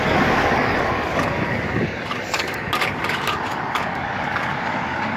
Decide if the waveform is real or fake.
fake